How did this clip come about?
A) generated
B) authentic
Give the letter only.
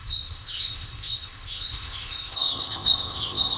A